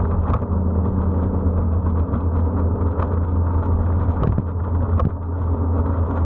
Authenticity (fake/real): real